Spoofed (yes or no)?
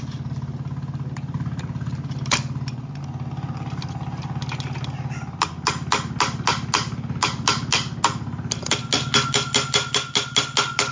no